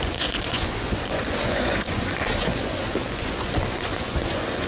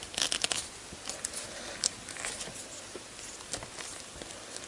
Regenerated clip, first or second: first